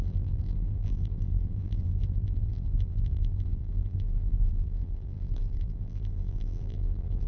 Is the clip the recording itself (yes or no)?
no